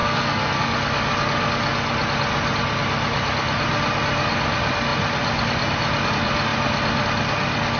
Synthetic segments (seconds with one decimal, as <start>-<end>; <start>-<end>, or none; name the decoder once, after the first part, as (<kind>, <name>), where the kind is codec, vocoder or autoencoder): 0.0-0.7 (codec, SNAC)